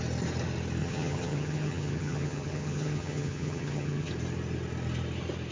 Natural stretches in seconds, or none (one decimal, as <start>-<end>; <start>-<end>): 0.0-0.8; 4.1-5.5